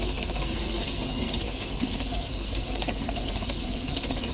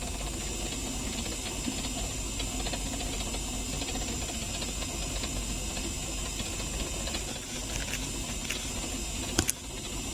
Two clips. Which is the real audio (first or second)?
second